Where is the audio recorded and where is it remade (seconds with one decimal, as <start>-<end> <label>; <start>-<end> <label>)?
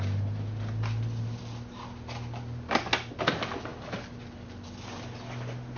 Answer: 0.0-5.8 recorded